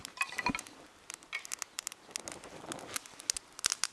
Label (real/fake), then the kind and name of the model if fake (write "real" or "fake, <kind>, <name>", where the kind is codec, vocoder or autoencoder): real